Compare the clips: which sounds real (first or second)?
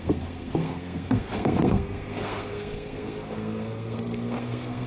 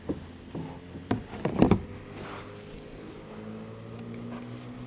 second